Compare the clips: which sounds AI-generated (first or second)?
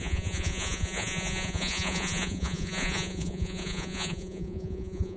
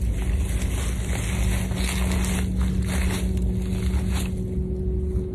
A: first